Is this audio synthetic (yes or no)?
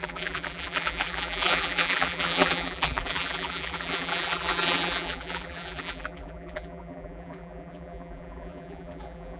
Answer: yes